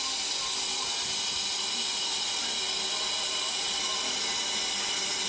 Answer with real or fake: real